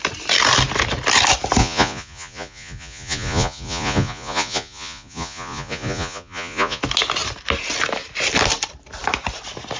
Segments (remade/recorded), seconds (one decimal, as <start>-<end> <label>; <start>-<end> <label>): 0.0-1.6 recorded; 1.6-6.8 remade; 6.8-9.8 recorded